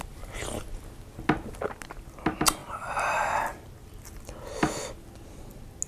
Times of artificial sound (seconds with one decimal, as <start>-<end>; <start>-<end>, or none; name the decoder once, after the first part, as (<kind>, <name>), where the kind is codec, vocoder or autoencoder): none